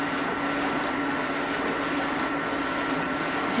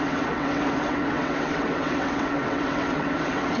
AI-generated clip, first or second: second